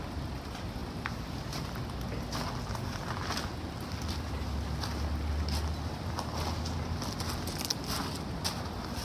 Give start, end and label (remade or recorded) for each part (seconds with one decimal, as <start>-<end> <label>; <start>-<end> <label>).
0.0-9.0 recorded

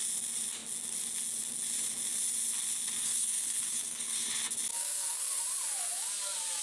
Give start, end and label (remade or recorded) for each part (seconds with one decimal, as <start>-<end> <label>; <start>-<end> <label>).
0.0-3.0 recorded; 3.0-4.3 remade; 4.3-4.7 recorded; 4.7-5.4 remade; 5.4-6.6 recorded